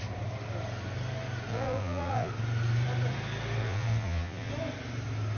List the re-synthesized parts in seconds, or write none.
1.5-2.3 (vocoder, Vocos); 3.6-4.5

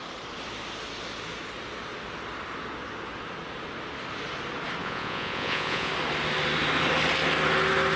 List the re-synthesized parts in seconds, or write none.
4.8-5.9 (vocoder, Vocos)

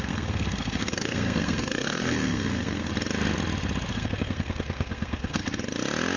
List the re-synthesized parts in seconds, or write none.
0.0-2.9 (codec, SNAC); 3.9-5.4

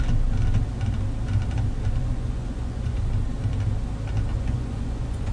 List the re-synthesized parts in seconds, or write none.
2.0-3.1 (vocoder, Vocos); 4.3-5.3

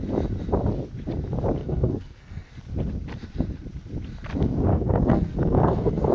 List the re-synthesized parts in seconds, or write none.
1.6-2.5 (codec, SNAC); 4.7-6.1

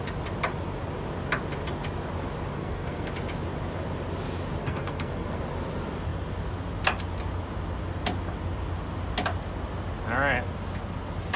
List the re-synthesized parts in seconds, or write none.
2.5-3.1 (codec, SNAC); 4.6-5.4